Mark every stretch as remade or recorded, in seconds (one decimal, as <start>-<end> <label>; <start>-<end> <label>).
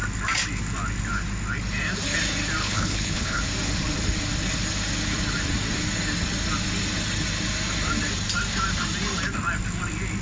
0.0-2.6 recorded; 2.6-3.4 remade; 3.4-10.2 recorded